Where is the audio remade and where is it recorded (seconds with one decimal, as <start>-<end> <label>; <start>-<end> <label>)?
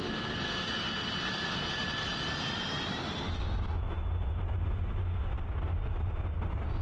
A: 0.0-6.8 recorded